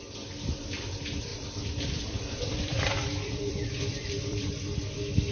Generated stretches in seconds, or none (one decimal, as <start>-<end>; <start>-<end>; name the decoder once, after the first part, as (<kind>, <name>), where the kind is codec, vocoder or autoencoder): 1.3-4.5 (vocoder, BigVGAN v2)